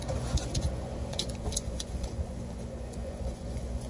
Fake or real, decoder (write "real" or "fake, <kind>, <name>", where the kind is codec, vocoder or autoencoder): fake, vocoder, Vocos